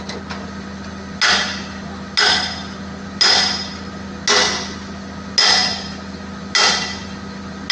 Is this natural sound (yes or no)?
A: yes